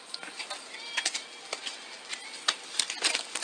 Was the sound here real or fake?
real